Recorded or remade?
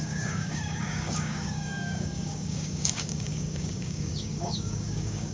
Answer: remade